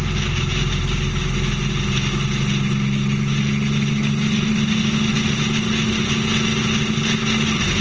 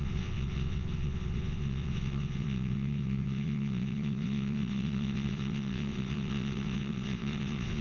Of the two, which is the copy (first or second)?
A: second